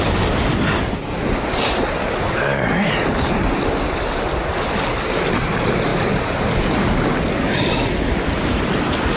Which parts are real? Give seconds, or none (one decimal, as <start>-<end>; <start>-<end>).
0.0-9.2